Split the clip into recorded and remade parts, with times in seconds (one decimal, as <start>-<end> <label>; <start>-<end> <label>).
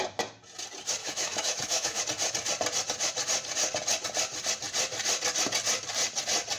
0.0-1.0 recorded; 1.0-2.0 remade; 2.0-6.6 recorded